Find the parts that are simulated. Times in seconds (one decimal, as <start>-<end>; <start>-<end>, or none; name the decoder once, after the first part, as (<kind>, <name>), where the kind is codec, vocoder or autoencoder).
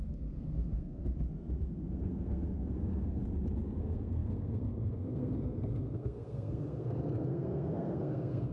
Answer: 0.0-1.0 (codec, SNAC); 1.6-3.2; 3.8-8.5